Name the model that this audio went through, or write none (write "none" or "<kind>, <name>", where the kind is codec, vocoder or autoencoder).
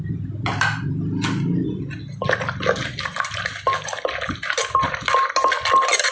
none